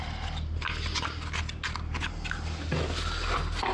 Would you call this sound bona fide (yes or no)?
yes